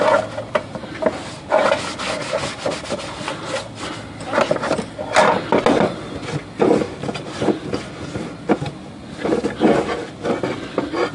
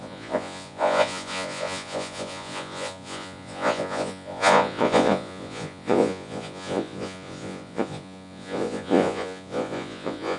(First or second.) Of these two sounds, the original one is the first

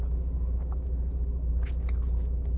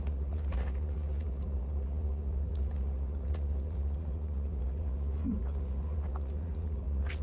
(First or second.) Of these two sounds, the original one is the first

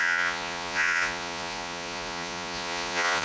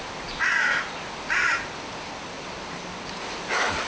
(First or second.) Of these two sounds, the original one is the second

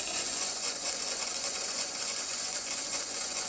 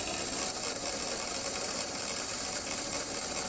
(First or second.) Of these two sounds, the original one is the second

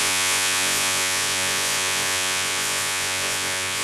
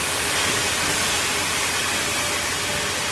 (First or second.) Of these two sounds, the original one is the second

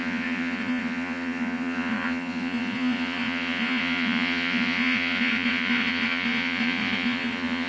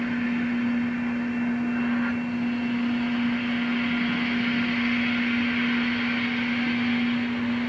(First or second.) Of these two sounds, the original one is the second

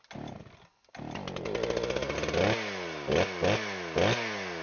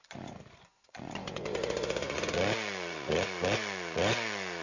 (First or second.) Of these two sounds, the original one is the first